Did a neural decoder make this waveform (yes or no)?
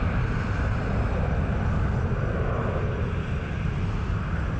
no